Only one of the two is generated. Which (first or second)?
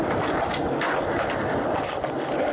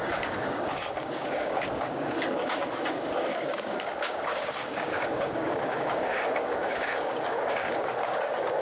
second